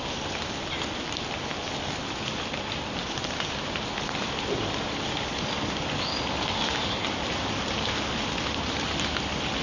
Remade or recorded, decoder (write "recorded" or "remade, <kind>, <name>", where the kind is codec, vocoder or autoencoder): recorded